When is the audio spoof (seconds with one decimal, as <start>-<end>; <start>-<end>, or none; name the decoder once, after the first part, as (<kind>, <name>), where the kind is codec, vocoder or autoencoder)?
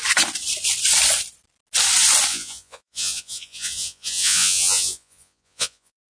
2.3-6.1 (vocoder, Vocos)